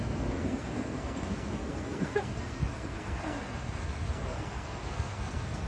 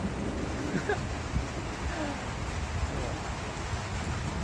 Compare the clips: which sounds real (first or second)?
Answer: second